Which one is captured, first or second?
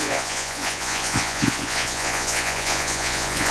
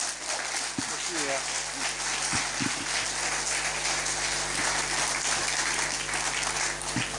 second